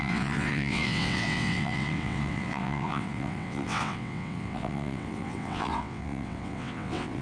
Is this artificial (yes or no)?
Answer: yes